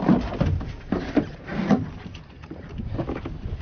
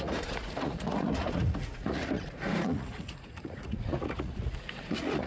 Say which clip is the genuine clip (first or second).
first